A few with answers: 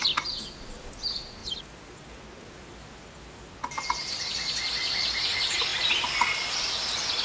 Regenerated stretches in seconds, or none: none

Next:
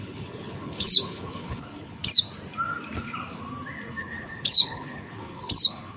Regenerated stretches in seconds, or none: 0.0-2.0 (codec, HILCodec); 4.0-6.0

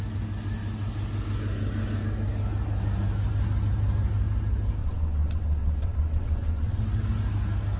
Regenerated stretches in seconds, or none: 4.8-6.8 (vocoder, WaveNeXt)

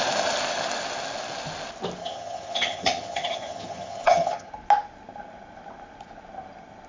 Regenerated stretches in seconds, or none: 2.0-4.5 (vocoder, HiFi-GAN)

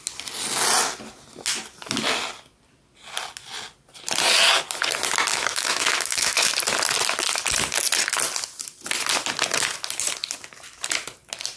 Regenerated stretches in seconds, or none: 5.3-6.5 (autoencoder, DAC-VAE)